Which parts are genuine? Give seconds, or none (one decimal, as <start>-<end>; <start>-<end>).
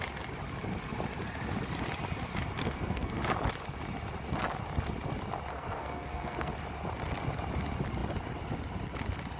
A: 0.0-2.6; 3.2-5.5; 6.5-9.4